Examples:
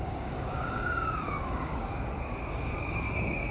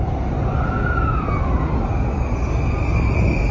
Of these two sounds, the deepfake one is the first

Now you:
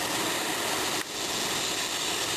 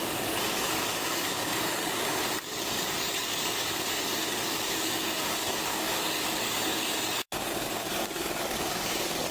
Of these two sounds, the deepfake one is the second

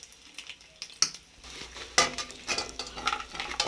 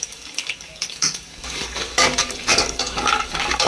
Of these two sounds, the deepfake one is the second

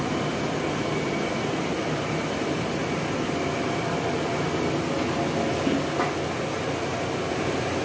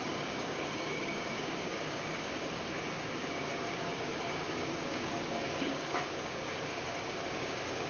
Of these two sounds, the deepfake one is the second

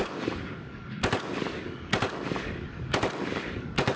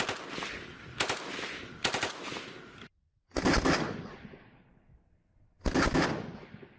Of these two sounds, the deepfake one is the first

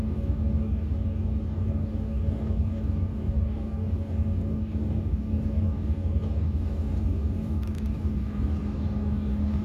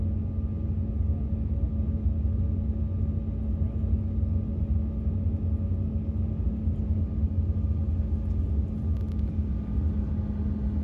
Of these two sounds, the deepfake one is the first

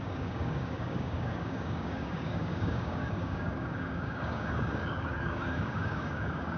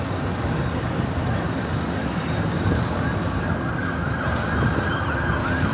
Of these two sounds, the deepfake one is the first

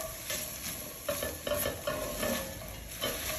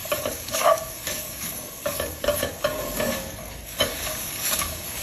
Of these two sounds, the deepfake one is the second